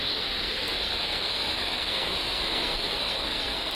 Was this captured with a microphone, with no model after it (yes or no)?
no